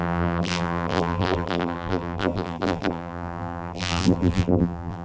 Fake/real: fake